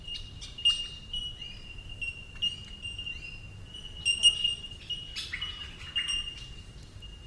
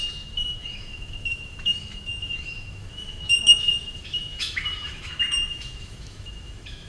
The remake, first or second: second